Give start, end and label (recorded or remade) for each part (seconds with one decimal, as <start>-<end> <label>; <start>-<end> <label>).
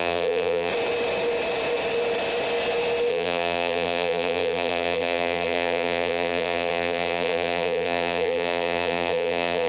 0.0-0.7 remade; 0.7-3.1 recorded; 3.1-9.7 remade